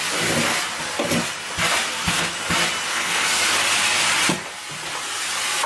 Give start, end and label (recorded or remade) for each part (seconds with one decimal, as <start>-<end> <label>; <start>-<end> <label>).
0.0-1.9 recorded; 1.9-2.4 remade; 2.4-2.9 recorded; 2.9-3.4 remade; 3.4-5.7 recorded